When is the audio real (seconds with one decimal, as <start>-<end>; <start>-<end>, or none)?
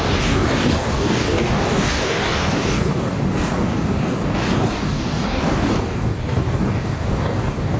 none